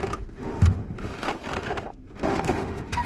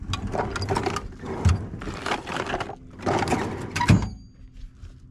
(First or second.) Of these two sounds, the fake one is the first